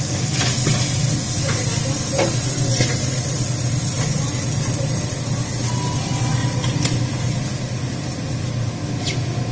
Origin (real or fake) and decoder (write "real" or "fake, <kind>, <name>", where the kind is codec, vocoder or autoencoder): real